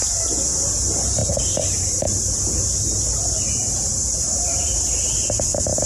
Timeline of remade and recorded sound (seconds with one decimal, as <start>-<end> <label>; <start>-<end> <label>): 0.0-1.2 recorded; 1.2-4.7 remade; 4.7-5.9 recorded